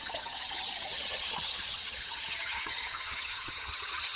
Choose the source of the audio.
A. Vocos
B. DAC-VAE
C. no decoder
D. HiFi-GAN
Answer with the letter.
D